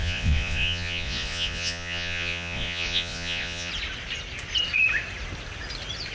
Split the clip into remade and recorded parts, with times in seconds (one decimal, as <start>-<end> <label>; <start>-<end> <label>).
0.0-3.7 remade; 3.7-6.1 recorded